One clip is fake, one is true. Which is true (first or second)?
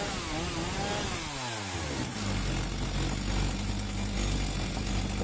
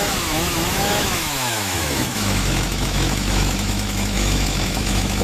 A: first